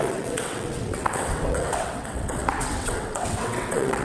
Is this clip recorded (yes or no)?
no